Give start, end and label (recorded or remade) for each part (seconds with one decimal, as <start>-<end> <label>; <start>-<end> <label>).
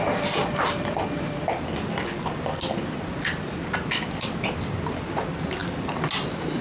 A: 0.0-6.6 recorded